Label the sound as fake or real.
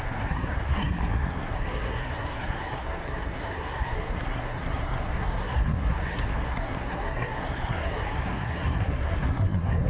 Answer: fake